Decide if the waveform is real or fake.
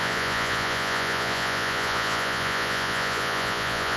fake